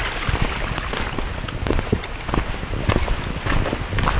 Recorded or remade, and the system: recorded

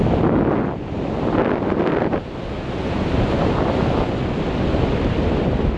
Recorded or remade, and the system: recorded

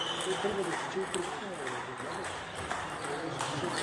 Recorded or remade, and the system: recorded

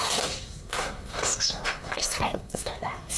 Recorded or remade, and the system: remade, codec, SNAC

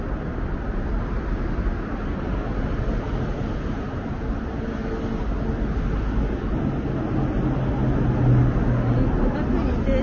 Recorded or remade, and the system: recorded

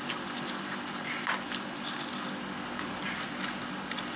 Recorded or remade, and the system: recorded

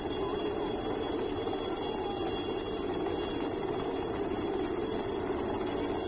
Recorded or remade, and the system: recorded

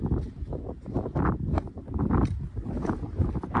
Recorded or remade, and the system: recorded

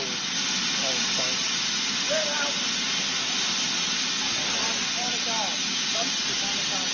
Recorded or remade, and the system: recorded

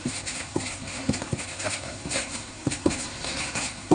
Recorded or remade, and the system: remade, codec, SNAC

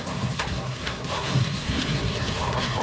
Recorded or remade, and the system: remade, codec, SNAC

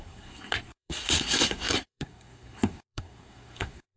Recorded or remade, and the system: remade, codec, SNAC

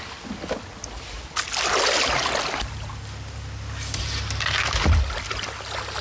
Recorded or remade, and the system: recorded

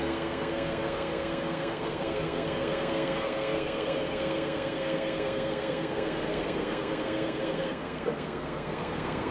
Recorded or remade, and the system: remade, codec, SNAC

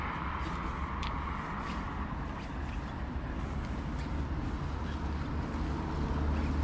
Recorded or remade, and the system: recorded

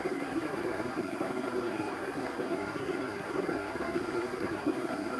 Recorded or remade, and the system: remade, codec, SNAC